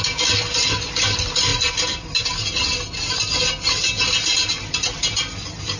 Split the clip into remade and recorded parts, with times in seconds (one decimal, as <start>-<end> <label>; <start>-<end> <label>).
0.0-5.8 recorded